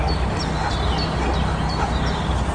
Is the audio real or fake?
real